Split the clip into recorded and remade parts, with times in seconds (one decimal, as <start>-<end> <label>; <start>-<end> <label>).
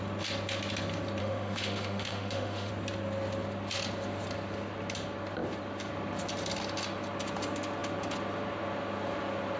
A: 0.0-1.2 recorded; 1.2-2.7 remade; 2.7-9.6 recorded